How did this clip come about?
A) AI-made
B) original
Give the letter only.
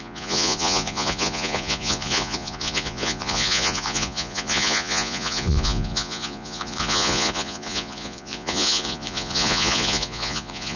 A